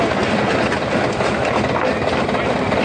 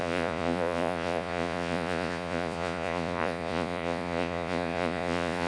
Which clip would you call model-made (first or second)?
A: second